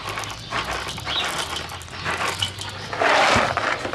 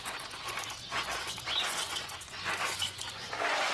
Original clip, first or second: first